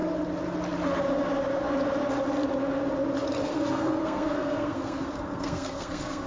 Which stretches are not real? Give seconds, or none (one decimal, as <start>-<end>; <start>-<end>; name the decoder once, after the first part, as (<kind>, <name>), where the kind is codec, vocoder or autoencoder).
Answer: 3.4-6.3 (codec, SNAC)